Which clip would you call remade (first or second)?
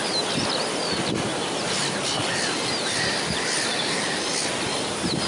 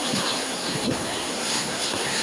second